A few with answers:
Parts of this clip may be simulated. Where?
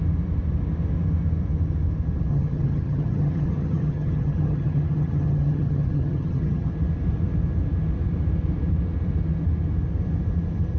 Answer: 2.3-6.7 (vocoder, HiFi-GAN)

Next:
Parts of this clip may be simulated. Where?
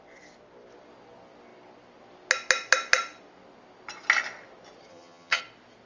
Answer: 4.9-5.4 (vocoder, HiFi-GAN)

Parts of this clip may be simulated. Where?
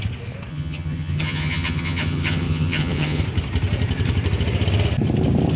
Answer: 0.5-3.2 (vocoder, HiFi-GAN)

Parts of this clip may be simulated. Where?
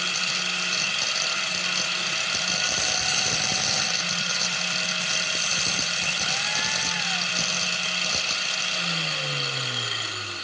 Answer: none